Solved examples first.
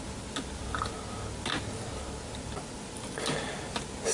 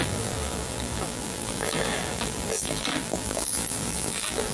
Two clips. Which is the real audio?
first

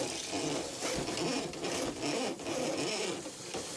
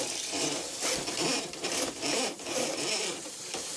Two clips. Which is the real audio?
first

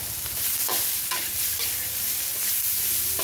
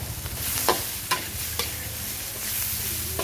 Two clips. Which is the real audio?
second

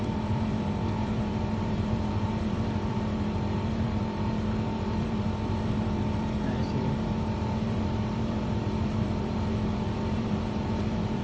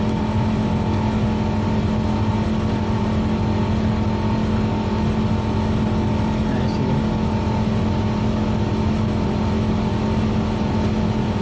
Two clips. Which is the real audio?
second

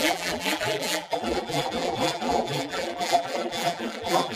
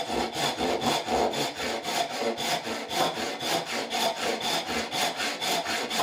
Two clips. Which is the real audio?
second